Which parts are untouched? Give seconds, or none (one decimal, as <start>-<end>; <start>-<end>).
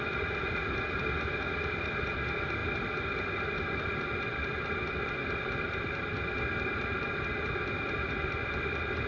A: 0.0-9.1